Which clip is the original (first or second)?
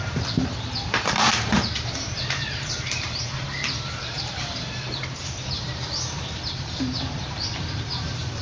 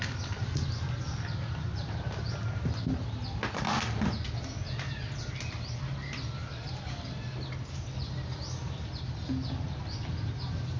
second